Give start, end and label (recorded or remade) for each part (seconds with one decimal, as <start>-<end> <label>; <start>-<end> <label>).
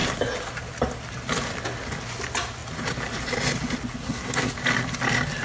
0.0-4.0 recorded; 4.0-4.5 remade; 4.5-5.4 recorded